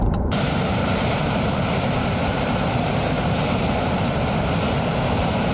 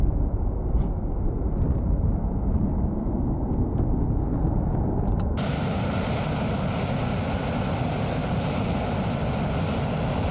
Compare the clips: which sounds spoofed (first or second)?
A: first